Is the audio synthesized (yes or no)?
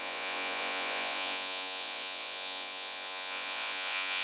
yes